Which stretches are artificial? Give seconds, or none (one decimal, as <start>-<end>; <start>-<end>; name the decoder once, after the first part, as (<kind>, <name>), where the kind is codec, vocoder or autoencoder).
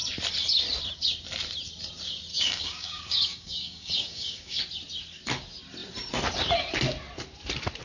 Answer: 2.3-4.6 (codec, DAC)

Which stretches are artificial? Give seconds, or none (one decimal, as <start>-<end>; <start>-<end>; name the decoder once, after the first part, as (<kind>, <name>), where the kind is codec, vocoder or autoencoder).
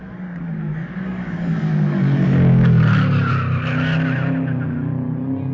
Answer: 0.0-3.3 (codec, DAC)